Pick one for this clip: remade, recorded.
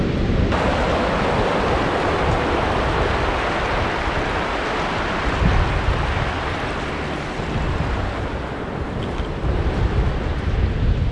recorded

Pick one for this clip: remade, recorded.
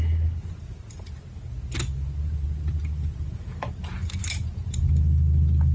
recorded